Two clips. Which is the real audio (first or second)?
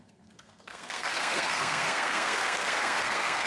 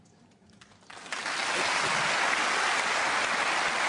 second